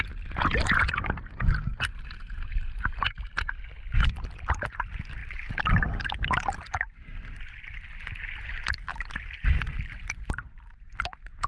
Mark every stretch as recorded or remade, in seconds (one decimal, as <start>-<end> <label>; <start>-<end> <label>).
0.0-11.5 recorded